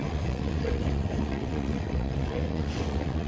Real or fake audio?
fake